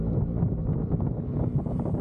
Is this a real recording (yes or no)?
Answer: yes